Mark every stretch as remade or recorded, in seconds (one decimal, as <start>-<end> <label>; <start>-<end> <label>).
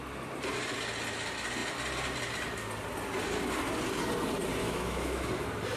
0.0-4.6 recorded; 4.6-5.3 remade; 5.3-5.8 recorded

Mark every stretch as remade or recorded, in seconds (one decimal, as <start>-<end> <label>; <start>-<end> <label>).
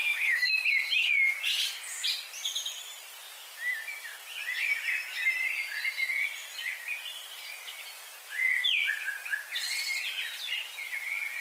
0.0-0.5 remade; 0.5-11.4 recorded